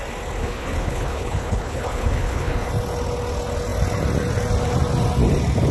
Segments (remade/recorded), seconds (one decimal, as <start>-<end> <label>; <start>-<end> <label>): 0.0-0.4 recorded; 0.4-2.7 remade; 2.7-5.7 recorded